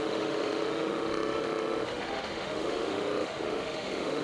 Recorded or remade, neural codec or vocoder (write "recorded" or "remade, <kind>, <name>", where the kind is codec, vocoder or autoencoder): remade, autoencoder, DAC-VAE